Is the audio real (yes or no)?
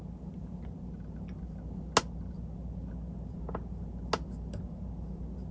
yes